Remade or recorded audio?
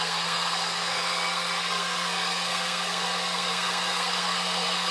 remade